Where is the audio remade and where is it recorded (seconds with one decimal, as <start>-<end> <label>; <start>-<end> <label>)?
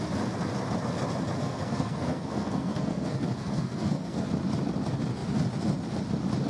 0.0-1.4 recorded; 1.4-4.3 remade; 4.3-6.5 recorded